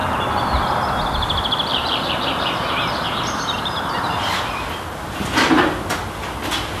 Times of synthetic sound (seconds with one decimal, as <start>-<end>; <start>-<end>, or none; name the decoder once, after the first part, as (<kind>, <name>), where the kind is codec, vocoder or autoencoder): 0.0-0.6 (vocoder, BigVGAN v2); 1.7-4.3